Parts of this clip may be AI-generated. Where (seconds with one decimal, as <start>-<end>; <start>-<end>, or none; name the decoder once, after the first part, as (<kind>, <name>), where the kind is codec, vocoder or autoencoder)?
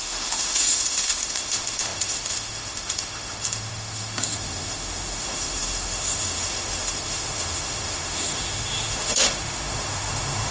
0.0-10.5 (autoencoder, DAC-VAE)